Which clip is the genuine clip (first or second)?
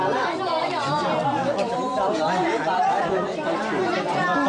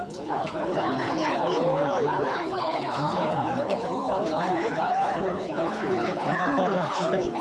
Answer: first